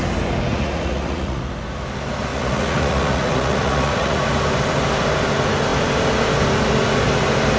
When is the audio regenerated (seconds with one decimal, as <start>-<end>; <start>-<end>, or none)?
0.5-1.4; 2.3-4.2

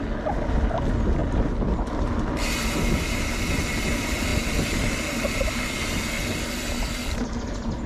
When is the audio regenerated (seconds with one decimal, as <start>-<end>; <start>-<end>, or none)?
none

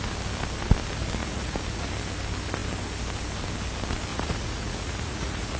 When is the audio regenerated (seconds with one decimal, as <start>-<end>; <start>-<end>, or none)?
1.2-1.9; 4.1-5.6

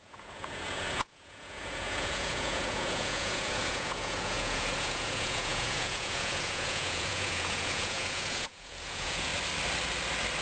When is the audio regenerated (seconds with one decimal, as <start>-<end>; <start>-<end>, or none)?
0.0-9.3

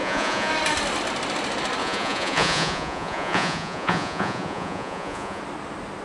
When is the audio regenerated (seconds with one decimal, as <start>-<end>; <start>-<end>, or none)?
0.0-0.5; 1.8-5.4

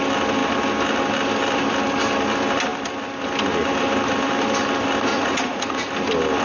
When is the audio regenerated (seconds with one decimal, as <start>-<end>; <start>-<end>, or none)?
5.1-5.9

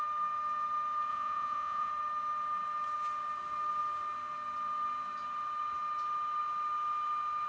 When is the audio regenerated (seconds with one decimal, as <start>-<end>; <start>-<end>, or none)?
1.1-1.9